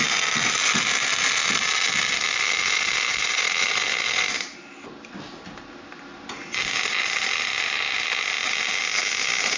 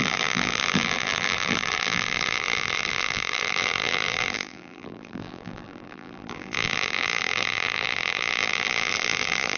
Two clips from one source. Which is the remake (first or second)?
second